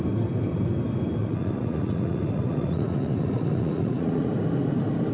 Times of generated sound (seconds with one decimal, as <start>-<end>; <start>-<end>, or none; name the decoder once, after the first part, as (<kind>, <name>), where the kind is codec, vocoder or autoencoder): 1.2-4.3 (vocoder, Vocos)